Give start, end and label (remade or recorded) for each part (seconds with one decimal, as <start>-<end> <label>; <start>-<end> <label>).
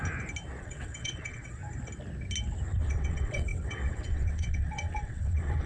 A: 0.0-0.6 recorded; 0.6-1.6 remade; 1.6-2.8 recorded; 2.8-5.7 remade